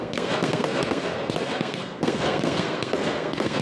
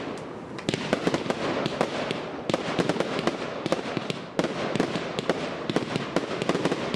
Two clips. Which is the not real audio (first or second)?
first